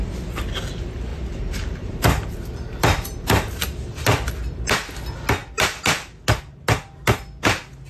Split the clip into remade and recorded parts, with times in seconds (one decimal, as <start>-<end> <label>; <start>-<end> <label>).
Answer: 0.0-1.1 recorded; 1.1-4.3 remade; 4.3-5.4 recorded; 5.4-6.2 remade; 6.2-7.9 recorded

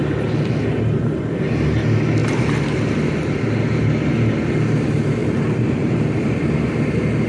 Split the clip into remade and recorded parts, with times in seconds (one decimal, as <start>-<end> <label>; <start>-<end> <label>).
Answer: 0.0-5.2 recorded; 5.2-6.4 remade; 6.4-7.3 recorded

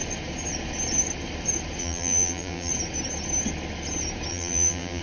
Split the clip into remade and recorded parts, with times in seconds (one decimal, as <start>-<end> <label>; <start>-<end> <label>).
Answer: 0.0-1.8 recorded; 1.8-2.7 remade; 2.7-4.3 recorded; 4.3-5.0 remade

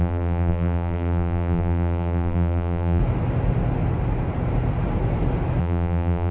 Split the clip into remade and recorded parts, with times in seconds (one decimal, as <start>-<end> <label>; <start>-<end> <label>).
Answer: 0.0-3.0 remade; 3.0-5.6 recorded; 5.6-6.3 remade